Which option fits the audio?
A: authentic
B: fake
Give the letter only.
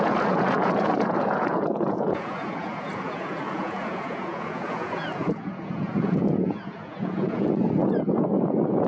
B